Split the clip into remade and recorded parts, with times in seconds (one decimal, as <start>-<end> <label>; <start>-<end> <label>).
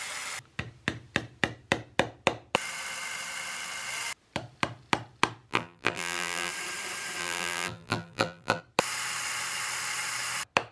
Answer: 0.0-5.5 recorded; 5.5-6.5 remade; 6.5-7.2 recorded; 7.2-8.6 remade; 8.6-10.7 recorded